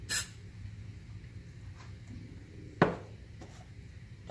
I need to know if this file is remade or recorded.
recorded